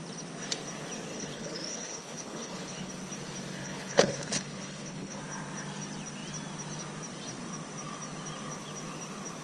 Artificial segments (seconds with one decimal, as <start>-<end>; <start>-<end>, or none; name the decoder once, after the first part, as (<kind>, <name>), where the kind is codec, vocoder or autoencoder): 1.1-2.9 (codec, HILCodec); 3.6-5.2